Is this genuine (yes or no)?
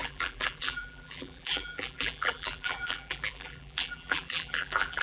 no